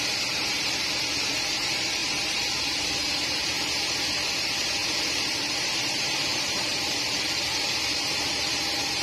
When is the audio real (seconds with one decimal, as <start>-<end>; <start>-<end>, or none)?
none